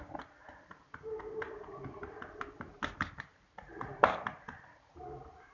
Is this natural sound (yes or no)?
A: no